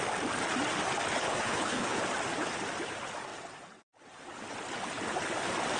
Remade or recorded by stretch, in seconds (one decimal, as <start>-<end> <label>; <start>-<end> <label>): 0.0-1.1 recorded; 1.1-2.0 remade; 2.0-5.8 recorded

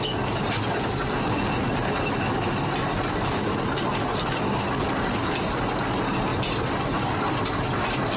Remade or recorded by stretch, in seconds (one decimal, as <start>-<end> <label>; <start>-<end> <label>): 0.0-8.2 recorded

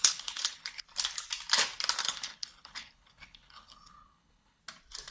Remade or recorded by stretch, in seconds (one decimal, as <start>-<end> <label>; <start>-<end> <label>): 0.0-0.8 remade; 0.8-2.0 recorded; 2.0-4.6 remade; 4.6-5.1 recorded

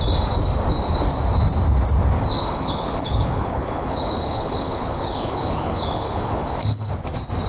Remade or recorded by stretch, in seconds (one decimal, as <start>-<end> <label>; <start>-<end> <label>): 0.0-2.4 recorded; 2.4-6.9 remade; 6.9-7.5 recorded

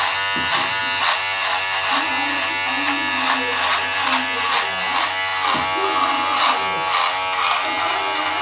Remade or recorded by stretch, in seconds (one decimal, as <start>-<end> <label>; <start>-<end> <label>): 0.0-8.4 recorded

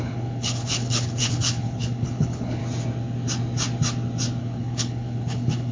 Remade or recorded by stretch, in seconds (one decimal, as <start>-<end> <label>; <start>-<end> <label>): 0.0-2.6 remade; 2.6-4.4 recorded; 4.4-5.7 remade

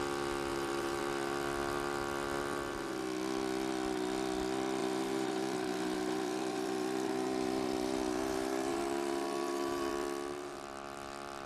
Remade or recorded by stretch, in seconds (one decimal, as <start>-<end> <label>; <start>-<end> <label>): 0.0-0.5 recorded; 0.5-1.0 remade; 1.0-4.8 recorded; 4.8-9.9 remade; 9.9-11.5 recorded